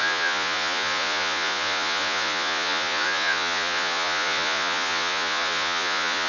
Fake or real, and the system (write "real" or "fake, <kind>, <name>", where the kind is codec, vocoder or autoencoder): fake, vocoder, Vocos